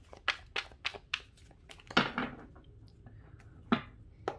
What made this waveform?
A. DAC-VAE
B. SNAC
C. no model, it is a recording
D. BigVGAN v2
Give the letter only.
C